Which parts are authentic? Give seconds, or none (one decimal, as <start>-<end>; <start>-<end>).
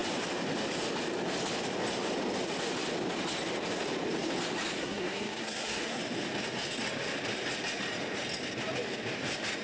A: 0.0-4.8; 6.0-9.6